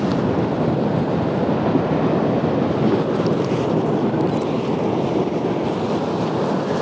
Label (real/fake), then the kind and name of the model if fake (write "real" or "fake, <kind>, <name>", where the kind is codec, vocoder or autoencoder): real